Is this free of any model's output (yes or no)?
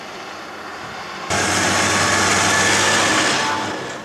yes